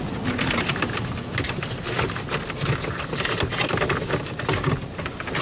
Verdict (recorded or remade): recorded